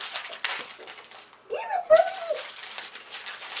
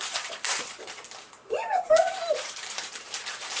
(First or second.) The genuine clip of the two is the first